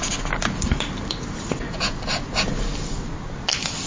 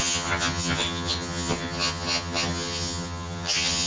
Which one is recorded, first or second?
first